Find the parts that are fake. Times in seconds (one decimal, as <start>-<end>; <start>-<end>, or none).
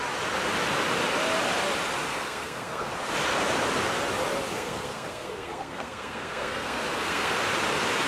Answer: 2.1-2.9; 4.5-7.3